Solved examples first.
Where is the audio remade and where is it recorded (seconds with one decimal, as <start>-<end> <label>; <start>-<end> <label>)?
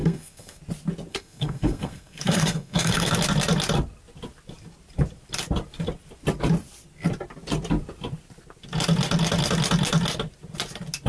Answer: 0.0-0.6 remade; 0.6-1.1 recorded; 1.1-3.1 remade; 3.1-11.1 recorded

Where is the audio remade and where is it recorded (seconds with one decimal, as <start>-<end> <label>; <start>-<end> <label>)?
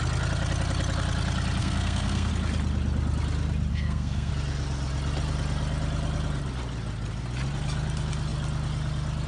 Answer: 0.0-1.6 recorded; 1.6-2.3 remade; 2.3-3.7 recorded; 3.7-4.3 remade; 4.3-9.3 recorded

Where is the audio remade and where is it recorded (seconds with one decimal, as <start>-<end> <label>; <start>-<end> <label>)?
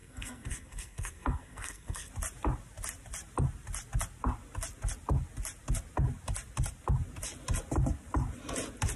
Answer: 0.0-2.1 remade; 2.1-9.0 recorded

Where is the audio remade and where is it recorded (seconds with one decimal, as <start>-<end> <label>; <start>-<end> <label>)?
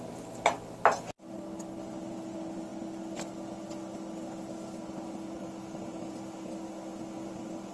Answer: 0.0-7.7 recorded